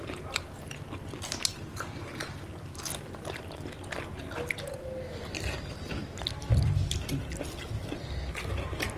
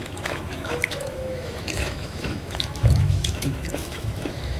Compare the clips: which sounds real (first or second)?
first